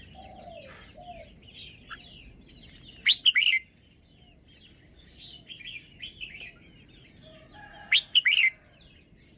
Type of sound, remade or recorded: recorded